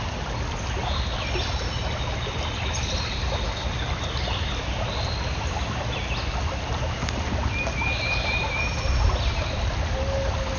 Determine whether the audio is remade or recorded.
recorded